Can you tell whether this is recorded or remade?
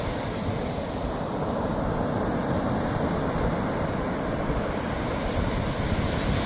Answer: recorded